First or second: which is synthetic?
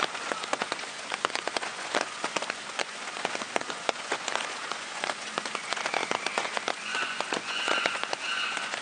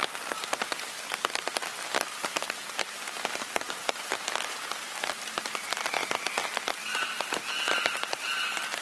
first